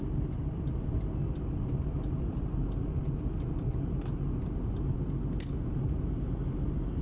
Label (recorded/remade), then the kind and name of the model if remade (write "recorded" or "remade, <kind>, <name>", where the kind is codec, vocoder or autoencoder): recorded